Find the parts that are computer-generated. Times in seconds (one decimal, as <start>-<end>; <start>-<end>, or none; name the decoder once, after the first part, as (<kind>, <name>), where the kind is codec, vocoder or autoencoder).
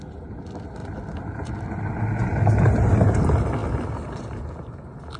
none